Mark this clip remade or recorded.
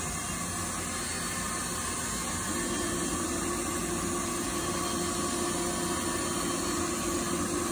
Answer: recorded